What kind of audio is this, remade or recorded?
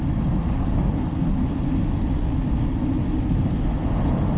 recorded